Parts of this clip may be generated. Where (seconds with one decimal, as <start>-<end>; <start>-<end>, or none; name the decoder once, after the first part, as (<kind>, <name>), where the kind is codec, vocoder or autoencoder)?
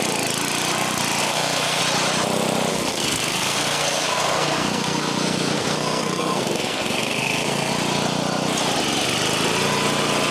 1.2-1.8 (codec, SNAC); 2.7-7.7